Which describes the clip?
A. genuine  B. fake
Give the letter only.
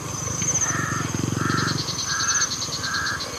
A